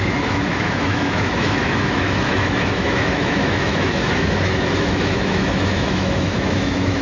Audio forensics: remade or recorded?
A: remade